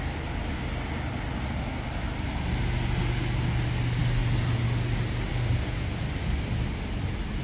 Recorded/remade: recorded